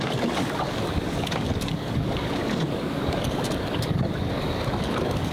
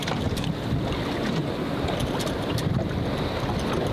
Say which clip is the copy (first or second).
first